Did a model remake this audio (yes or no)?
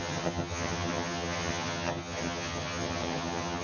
yes